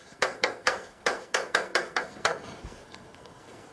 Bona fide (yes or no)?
no